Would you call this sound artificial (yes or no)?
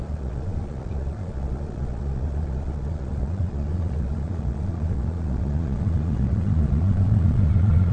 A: yes